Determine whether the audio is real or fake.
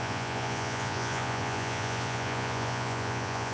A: fake